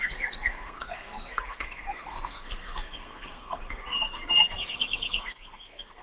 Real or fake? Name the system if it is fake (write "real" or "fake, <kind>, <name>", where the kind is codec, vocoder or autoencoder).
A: fake, codec, SNAC